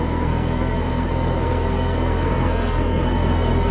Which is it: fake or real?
fake